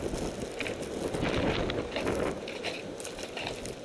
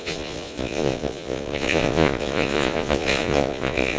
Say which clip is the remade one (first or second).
second